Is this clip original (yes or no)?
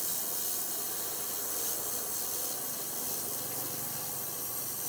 no